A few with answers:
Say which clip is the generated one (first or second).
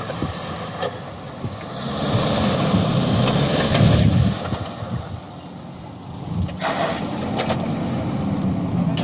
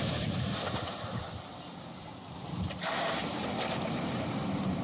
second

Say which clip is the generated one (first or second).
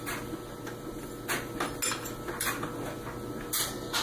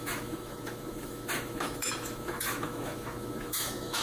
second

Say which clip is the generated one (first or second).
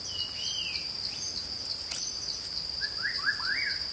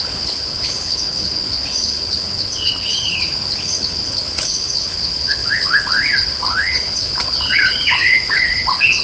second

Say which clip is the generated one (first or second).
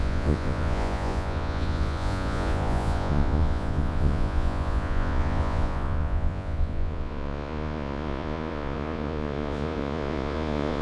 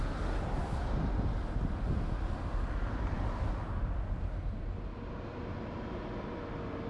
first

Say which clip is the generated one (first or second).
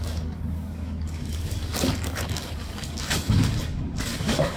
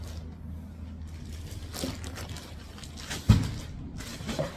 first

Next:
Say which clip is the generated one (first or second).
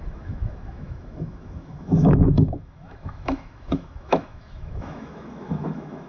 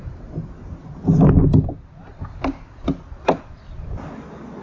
first